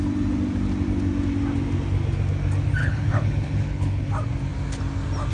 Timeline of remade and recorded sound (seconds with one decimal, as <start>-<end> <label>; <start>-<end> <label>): 0.0-2.8 recorded; 2.8-4.1 remade; 4.1-5.3 recorded